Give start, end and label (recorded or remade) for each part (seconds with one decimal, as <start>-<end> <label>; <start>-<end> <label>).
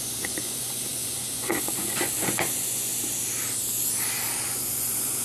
0.0-2.9 remade; 2.9-4.5 recorded; 4.5-5.2 remade